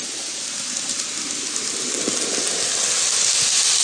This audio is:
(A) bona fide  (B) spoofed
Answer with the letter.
A